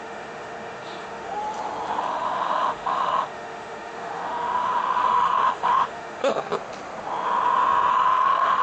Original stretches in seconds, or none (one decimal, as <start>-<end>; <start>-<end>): 1.4-2.0; 6.5-7.9